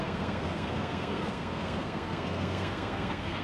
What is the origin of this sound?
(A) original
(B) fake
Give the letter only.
B